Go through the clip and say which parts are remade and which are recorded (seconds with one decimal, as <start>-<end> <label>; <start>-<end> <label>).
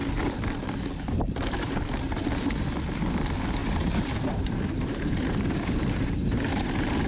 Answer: 0.0-3.6 recorded; 3.6-7.1 remade